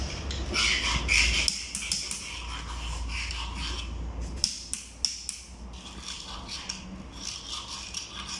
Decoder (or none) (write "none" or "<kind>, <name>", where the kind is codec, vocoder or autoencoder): none